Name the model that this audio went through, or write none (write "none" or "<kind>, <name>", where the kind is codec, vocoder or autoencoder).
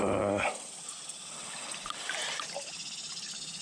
none